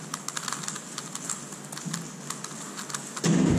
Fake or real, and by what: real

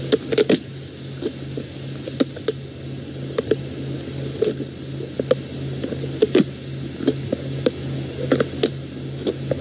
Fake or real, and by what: real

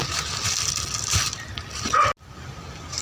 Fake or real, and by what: real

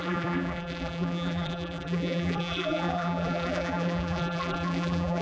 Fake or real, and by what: fake, vocoder, BigVGAN v2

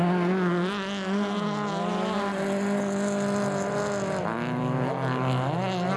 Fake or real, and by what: real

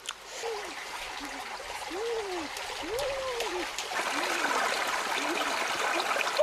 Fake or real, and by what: real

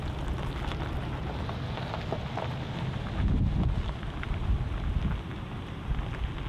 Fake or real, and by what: real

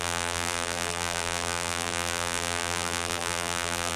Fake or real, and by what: fake, vocoder, BigVGAN v2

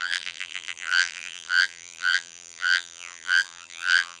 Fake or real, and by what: fake, vocoder, BigVGAN v2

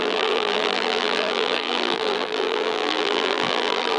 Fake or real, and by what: fake, vocoder, BigVGAN v2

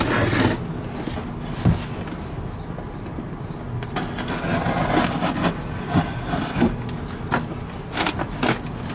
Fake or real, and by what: real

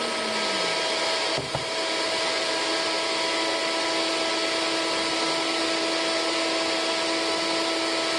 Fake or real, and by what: real